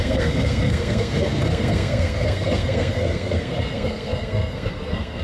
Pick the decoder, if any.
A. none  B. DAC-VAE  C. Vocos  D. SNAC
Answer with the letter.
D